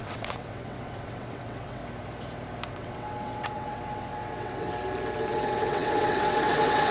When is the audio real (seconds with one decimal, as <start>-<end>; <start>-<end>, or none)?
1.8-2.7; 4.7-5.3